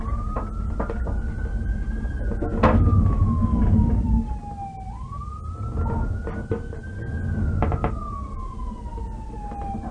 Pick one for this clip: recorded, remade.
recorded